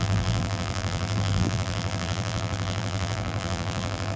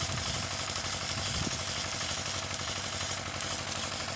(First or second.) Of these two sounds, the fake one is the first